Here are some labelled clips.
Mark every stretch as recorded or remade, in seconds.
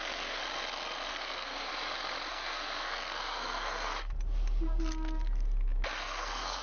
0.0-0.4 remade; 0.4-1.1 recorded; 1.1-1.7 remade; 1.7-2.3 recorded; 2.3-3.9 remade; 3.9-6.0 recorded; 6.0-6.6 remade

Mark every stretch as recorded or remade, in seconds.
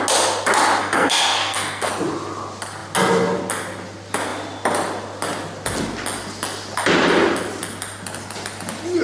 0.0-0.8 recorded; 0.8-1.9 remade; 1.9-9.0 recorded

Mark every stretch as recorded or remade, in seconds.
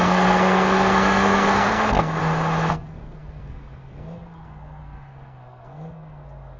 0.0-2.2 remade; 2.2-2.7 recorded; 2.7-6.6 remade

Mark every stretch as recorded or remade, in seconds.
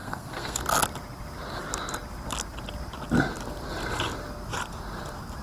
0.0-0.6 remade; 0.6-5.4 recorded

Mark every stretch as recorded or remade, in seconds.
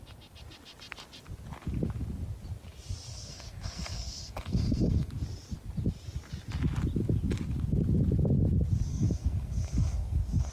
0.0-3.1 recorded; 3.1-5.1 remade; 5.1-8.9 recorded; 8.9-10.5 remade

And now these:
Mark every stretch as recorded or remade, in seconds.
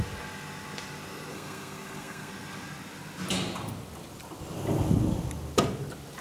0.0-1.3 recorded; 1.3-2.3 remade; 2.3-6.2 recorded